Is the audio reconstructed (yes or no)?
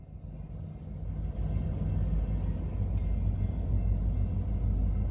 no